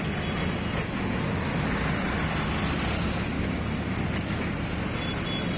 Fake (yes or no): no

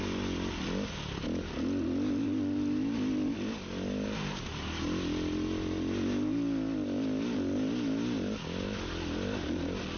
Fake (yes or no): no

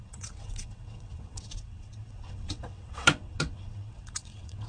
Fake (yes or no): yes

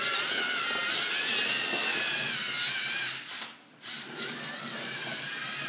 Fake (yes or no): no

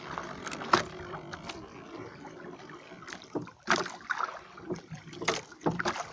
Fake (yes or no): no